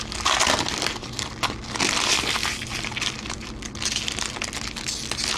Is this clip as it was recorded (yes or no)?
yes